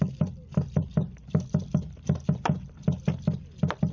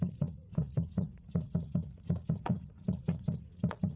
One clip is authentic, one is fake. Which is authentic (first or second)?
first